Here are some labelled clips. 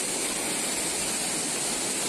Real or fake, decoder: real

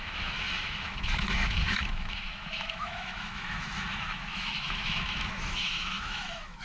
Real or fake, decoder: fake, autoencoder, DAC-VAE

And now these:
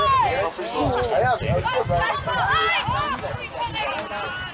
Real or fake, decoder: real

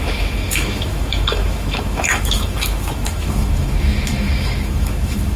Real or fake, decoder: fake, autoencoder, DAC-VAE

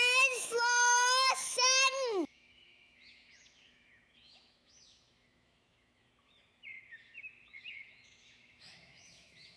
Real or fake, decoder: fake, autoencoder, DAC-VAE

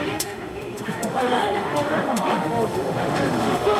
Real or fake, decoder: fake, autoencoder, DAC-VAE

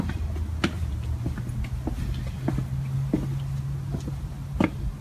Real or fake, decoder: real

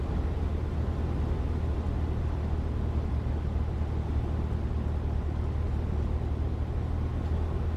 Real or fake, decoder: real